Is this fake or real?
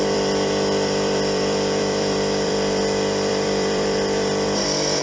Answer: fake